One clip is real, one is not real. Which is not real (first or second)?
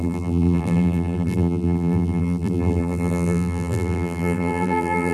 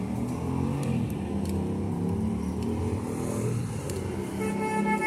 first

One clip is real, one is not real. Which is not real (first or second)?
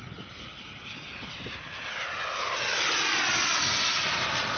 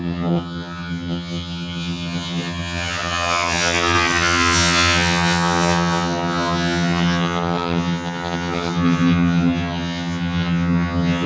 second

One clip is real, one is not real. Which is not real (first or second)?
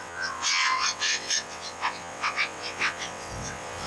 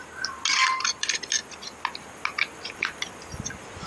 first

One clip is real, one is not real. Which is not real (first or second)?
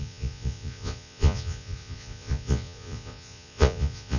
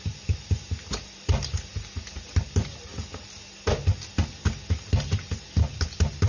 first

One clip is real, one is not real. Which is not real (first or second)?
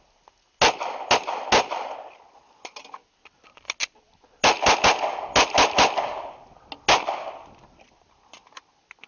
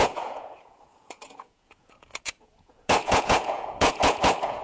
second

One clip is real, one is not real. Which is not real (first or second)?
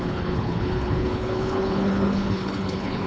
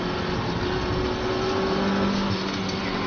first